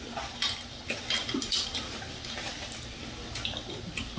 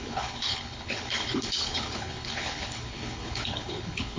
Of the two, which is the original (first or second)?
first